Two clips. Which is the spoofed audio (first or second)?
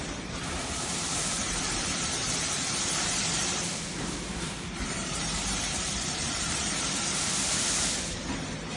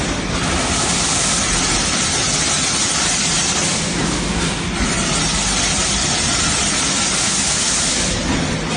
first